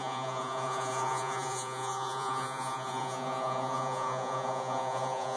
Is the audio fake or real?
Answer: fake